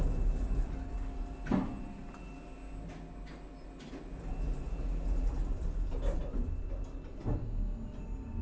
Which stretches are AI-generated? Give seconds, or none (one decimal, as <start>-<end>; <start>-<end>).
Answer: none

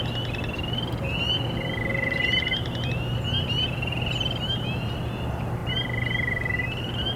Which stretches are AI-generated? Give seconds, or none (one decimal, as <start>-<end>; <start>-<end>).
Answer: 1.9-4.7

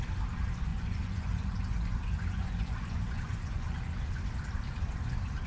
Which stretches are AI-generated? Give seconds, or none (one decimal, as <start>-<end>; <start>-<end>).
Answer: 0.7-4.0

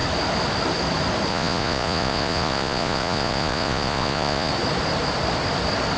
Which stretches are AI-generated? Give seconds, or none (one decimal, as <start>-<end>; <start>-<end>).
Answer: 1.3-4.5

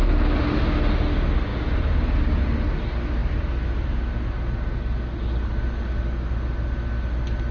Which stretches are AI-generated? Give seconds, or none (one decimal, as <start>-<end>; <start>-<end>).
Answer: none

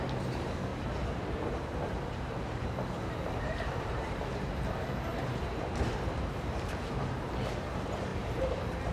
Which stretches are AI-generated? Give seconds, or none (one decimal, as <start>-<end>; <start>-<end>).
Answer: 0.0-8.9

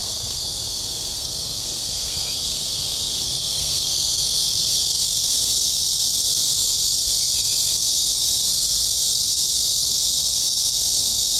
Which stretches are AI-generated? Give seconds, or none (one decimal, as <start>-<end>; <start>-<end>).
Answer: 0.0-11.4